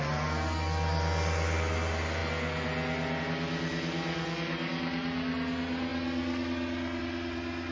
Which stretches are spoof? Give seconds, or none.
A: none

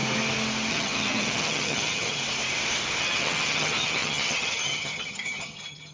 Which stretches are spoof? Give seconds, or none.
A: 0.7-2.2 (vocoder, HiFi-GAN); 3.0-5.9

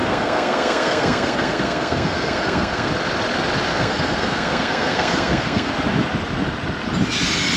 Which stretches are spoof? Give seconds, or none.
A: 0.0-2.9 (codec, SNAC); 3.7-5.7